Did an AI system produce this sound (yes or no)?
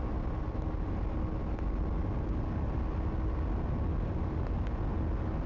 no